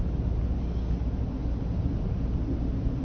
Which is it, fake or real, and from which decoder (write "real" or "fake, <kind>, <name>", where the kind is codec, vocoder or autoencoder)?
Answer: real